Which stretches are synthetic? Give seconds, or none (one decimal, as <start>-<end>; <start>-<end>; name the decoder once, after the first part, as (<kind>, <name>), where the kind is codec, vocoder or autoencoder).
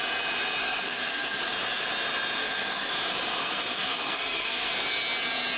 0.6-1.4 (codec, SNAC); 2.4-2.9; 3.4-4.7